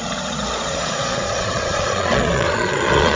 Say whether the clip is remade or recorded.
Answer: remade